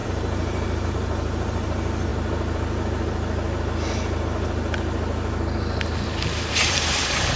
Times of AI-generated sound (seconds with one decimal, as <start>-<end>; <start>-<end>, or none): 0.0-2.1; 6.5-7.4